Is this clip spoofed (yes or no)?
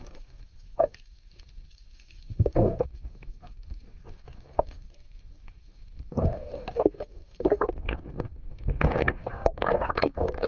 yes